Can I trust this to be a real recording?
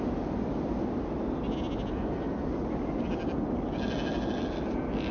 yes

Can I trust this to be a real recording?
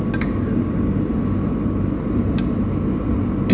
yes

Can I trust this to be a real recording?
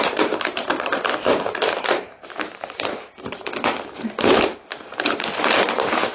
no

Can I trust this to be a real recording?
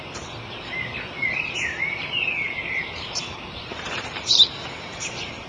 no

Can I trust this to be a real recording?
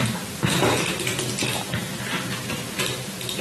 yes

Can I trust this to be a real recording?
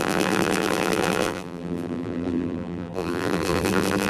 no